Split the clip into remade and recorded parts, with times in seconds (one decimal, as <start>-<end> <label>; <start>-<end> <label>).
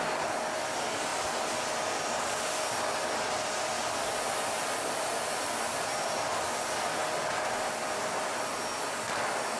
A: 0.0-9.6 recorded